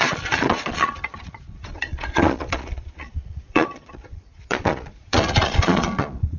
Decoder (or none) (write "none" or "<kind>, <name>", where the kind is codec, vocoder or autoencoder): vocoder, Vocos